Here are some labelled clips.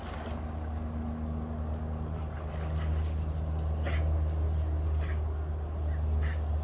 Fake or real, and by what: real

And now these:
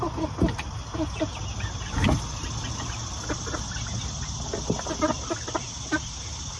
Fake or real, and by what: real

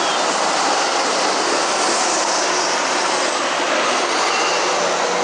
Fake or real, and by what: real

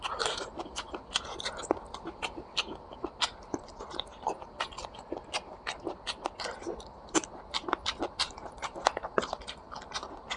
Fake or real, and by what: fake, vocoder, BigVGAN v2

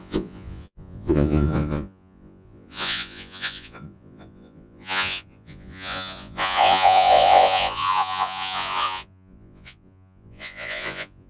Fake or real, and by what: fake, vocoder, Vocos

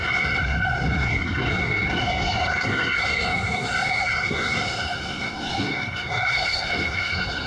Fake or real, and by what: fake, codec, SNAC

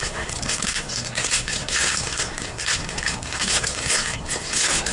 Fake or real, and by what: fake, codec, SNAC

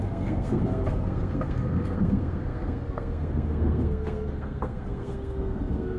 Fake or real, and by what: fake, codec, SNAC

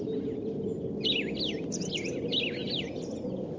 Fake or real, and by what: real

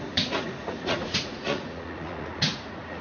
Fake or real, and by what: fake, vocoder, Vocos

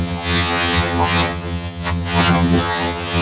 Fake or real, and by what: fake, vocoder, HiFi-GAN